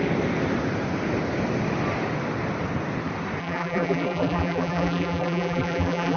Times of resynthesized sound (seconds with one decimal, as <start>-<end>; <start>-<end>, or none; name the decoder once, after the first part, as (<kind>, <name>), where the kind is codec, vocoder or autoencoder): 3.4-6.2 (vocoder, BigVGAN v2)